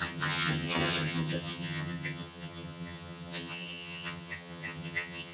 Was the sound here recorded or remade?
remade